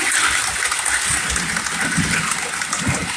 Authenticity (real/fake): real